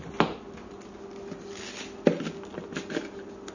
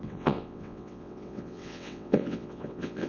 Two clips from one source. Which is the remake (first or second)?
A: second